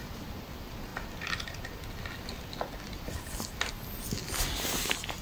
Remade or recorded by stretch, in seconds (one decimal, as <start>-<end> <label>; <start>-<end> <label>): 0.0-5.2 recorded